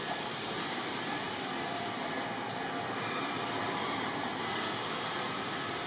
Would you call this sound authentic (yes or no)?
yes